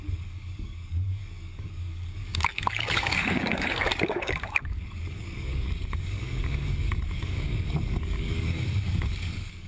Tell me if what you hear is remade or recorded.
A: remade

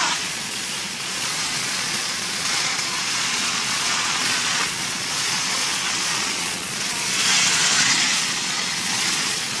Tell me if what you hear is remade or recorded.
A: remade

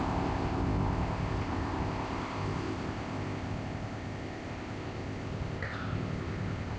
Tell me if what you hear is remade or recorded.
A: remade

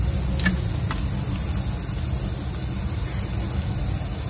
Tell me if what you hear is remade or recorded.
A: recorded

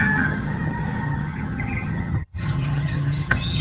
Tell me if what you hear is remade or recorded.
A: remade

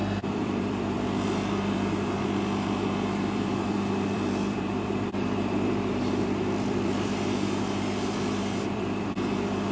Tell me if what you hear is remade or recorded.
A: remade